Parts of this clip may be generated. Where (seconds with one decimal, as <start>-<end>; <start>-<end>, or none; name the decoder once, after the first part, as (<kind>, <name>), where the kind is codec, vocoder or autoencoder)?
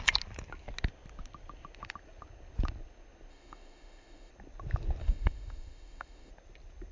3.3-4.3 (autoencoder, DAC-VAE); 5.0-6.3